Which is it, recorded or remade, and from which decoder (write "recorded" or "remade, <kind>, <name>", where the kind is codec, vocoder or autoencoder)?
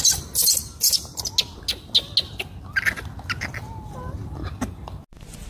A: recorded